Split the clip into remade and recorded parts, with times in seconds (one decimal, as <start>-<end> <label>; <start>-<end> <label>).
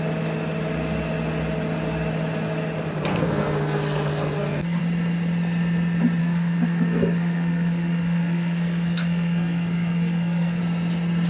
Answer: 0.0-3.1 recorded; 3.1-4.8 remade; 4.8-6.2 recorded; 6.2-10.6 remade; 10.6-11.3 recorded